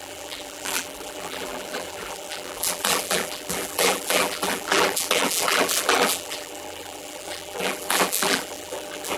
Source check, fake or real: fake